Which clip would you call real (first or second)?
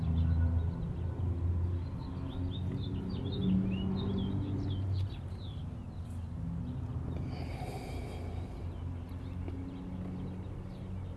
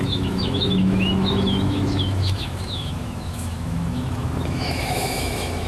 first